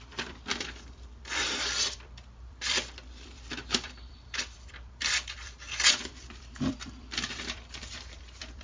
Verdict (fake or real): fake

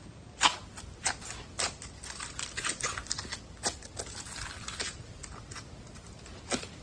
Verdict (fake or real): real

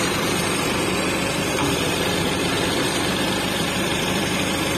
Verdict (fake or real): fake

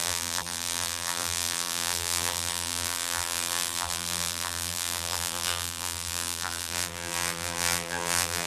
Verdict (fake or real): fake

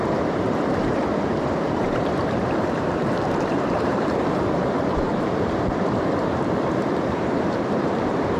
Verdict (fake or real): fake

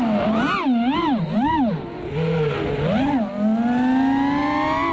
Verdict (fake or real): real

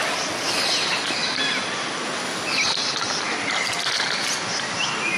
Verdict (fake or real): real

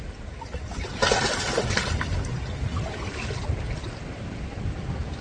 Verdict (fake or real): real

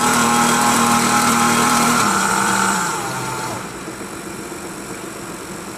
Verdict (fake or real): fake